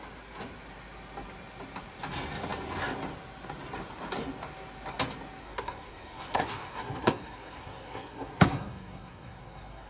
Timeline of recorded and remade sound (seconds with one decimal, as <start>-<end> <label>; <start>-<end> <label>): 0.0-5.4 recorded; 5.4-9.9 remade